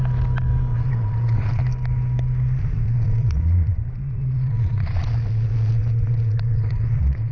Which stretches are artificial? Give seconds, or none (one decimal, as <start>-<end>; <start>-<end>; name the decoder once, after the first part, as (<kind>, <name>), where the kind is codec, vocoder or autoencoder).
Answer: 0.7-1.6 (vocoder, Vocos); 2.6-7.3